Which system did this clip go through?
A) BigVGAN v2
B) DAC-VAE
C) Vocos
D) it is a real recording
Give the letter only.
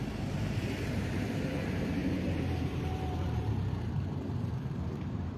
A